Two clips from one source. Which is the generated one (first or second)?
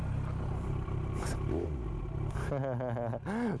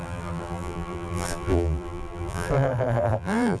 second